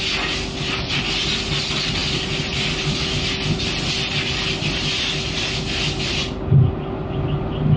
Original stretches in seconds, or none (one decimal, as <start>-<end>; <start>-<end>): 0.0-7.8